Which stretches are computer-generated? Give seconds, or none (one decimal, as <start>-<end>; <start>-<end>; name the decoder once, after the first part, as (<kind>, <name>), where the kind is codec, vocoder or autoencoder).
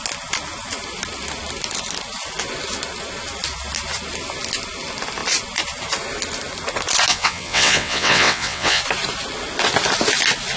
7.1-8.8 (vocoder, WaveNeXt)